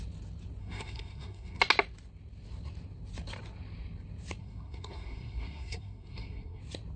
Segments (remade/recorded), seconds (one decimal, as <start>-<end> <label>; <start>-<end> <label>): 0.0-0.6 recorded; 0.6-1.6 remade; 1.6-4.4 recorded; 4.4-6.6 remade; 6.6-7.0 recorded